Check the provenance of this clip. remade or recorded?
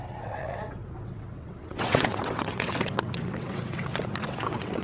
remade